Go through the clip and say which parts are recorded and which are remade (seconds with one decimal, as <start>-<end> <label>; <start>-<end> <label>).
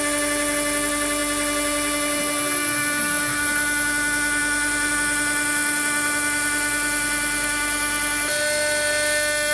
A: 0.0-9.5 recorded